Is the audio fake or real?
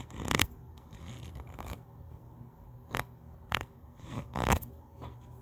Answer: fake